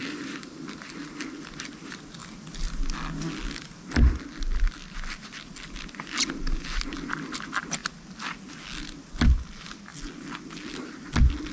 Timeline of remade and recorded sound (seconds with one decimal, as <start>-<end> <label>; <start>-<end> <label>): 0.0-11.5 recorded